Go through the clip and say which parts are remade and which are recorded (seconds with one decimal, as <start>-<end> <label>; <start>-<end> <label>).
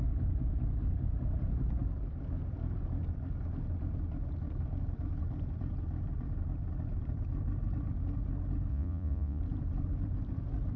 0.0-8.7 recorded; 8.7-9.4 remade; 9.4-10.8 recorded